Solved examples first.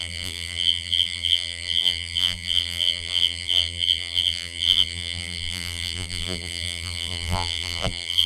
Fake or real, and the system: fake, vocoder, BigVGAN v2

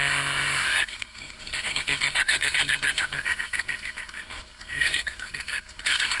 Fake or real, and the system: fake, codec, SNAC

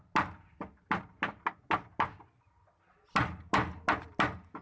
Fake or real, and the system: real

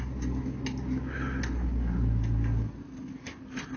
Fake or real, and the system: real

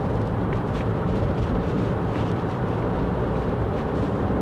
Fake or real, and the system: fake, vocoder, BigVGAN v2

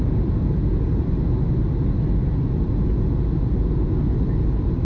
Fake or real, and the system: real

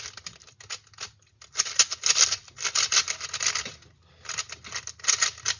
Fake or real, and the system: real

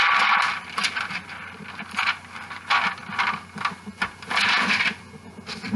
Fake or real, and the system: real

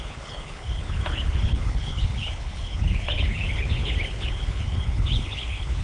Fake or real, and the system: fake, codec, HILCodec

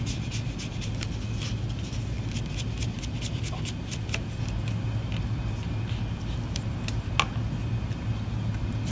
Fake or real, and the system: real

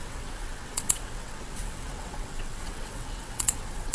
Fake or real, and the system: fake, vocoder, WaveNeXt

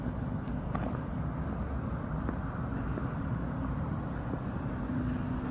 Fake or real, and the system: real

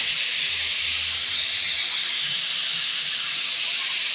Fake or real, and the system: real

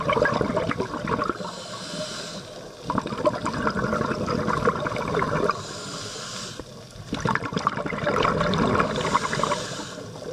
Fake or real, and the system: real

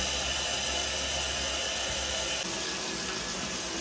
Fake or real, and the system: real